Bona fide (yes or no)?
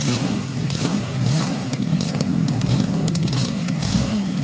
no